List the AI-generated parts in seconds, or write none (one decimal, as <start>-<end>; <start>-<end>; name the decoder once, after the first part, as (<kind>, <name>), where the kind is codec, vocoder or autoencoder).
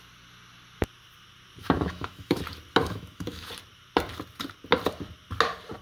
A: 1.6-2.4 (autoencoder, DAC-VAE); 2.8-3.5